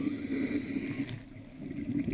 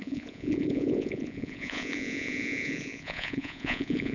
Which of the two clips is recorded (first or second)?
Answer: first